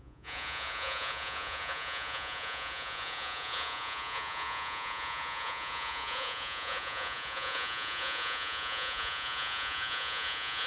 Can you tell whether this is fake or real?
fake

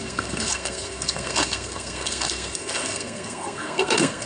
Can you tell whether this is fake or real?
fake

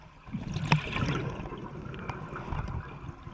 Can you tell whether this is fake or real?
real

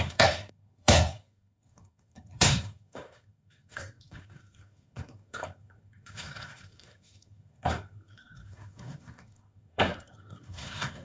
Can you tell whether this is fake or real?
fake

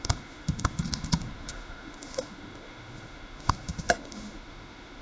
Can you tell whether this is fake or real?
fake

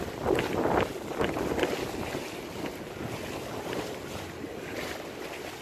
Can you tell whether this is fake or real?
real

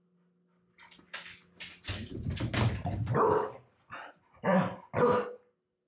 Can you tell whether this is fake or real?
real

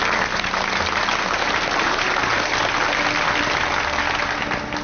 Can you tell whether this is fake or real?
real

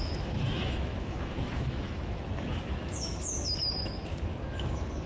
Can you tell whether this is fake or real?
fake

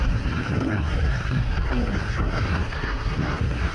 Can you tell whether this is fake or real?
fake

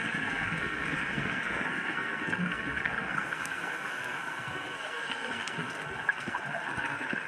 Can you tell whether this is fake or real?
fake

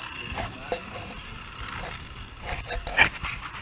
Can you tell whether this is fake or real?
fake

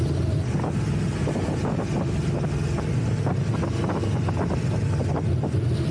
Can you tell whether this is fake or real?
real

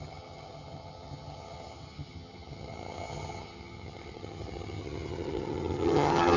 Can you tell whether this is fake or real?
fake